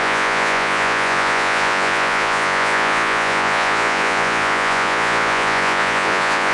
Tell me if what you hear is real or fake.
fake